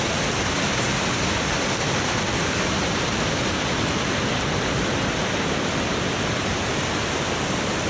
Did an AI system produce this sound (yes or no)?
no